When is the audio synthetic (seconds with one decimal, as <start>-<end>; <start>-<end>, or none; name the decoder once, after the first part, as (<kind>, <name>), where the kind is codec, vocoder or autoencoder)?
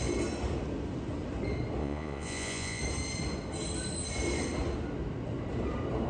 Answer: 1.8-2.8 (vocoder, Vocos)